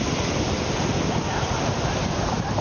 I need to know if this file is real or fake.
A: real